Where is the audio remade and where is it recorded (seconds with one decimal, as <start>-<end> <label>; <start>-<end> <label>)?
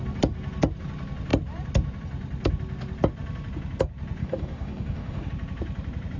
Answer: 0.0-4.2 recorded; 4.2-5.3 remade; 5.3-6.2 recorded